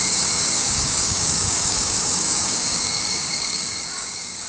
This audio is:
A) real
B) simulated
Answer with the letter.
B